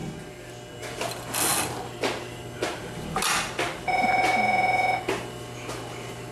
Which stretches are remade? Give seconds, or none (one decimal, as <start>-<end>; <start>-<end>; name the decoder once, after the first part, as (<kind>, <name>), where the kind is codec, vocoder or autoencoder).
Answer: none